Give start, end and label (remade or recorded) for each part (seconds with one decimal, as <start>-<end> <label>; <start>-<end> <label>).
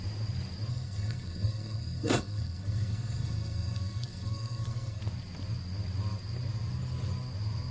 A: 0.0-0.7 recorded; 0.7-5.0 remade; 5.0-7.7 recorded